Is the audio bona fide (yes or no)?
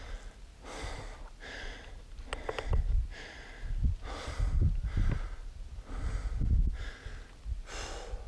yes